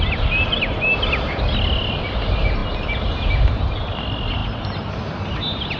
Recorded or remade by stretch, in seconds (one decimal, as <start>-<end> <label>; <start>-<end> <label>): 0.0-5.8 recorded